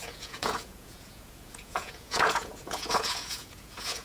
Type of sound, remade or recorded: remade